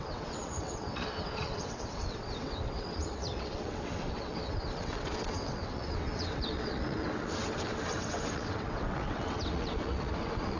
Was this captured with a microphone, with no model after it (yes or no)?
no